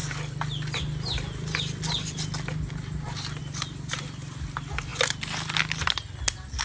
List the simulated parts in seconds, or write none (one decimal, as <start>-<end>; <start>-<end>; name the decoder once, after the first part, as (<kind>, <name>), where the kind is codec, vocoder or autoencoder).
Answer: none